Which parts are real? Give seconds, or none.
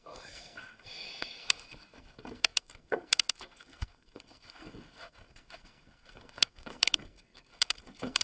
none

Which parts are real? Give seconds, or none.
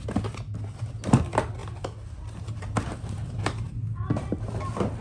0.0-5.0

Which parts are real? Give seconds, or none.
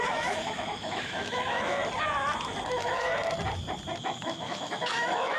1.8-2.7; 3.1-4.0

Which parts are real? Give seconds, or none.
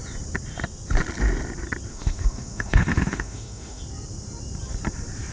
0.0-1.9; 3.8-5.3